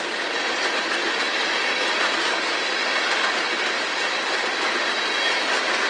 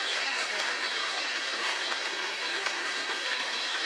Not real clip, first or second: second